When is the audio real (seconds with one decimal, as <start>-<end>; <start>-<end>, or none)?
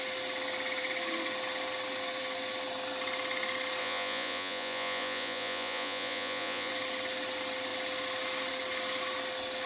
0.0-3.8; 6.7-9.7